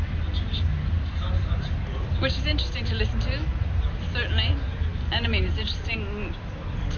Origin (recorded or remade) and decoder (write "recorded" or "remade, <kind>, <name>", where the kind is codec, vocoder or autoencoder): recorded